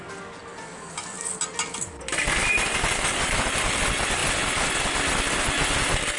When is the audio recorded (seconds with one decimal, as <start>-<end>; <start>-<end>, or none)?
0.0-6.2